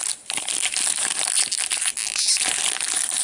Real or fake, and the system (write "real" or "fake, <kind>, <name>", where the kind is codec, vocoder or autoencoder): real